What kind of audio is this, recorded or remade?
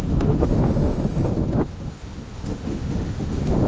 remade